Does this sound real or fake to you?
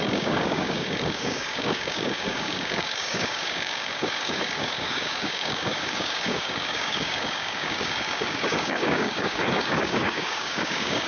fake